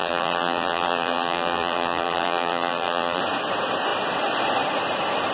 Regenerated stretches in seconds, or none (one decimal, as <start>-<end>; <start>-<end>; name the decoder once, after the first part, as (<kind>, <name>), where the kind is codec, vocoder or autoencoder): 0.0-3.2 (vocoder, BigVGAN v2)